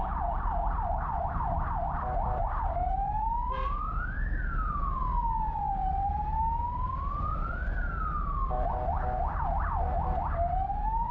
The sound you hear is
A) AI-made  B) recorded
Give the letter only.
B